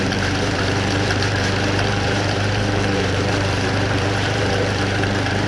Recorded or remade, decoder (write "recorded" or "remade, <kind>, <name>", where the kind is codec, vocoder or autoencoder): remade, vocoder, BigVGAN v2